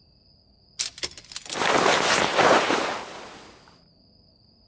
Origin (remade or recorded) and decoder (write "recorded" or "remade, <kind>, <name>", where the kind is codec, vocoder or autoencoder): recorded